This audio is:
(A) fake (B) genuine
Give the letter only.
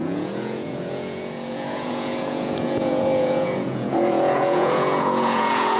A